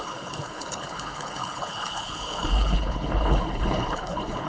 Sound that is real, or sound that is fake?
fake